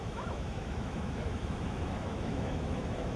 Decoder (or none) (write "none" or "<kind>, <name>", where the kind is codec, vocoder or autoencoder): autoencoder, DAC-VAE